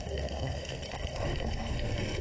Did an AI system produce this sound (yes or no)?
yes